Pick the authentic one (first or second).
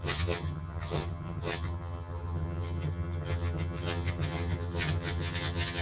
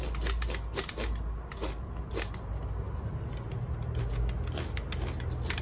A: second